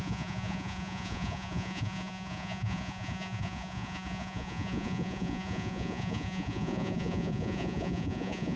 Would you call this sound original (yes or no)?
no